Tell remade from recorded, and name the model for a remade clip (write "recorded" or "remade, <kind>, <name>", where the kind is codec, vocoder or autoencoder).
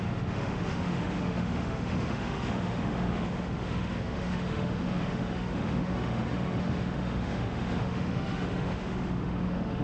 remade, autoencoder, DAC-VAE